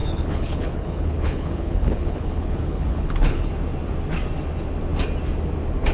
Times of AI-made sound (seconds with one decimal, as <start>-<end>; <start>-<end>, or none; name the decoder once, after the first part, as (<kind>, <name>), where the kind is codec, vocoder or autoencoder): 0.0-3.5 (codec, HILCodec)